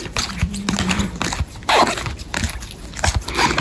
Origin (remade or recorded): recorded